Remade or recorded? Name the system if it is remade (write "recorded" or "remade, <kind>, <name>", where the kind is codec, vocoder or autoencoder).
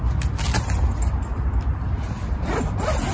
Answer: recorded